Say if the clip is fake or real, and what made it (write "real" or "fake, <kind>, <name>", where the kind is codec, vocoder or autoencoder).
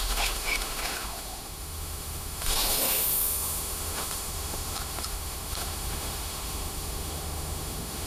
fake, autoencoder, DAC-VAE